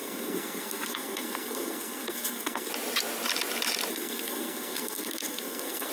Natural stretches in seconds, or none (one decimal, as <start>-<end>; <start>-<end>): 2.7-3.9